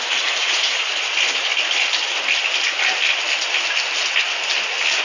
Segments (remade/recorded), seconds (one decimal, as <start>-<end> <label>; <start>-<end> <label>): 0.0-0.4 recorded; 0.4-0.9 remade; 0.9-5.0 recorded